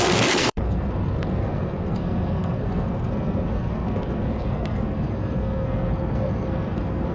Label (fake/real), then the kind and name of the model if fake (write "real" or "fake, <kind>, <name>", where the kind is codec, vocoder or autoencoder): fake, codec, SNAC